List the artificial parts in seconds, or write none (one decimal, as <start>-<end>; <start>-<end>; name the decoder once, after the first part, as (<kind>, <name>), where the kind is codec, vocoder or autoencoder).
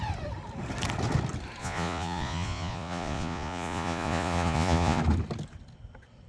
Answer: 1.6-5.0 (vocoder, Vocos)